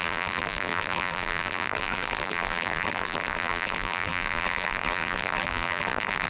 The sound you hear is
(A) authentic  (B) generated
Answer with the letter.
B